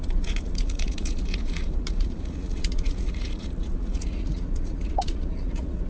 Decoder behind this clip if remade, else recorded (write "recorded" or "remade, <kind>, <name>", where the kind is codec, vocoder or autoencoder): remade, vocoder, Vocos